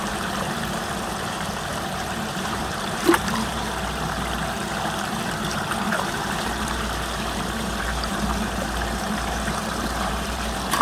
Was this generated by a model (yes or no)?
yes